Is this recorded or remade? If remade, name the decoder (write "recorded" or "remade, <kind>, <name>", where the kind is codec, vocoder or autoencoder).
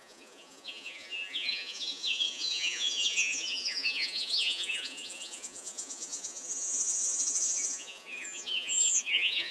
remade, vocoder, Vocos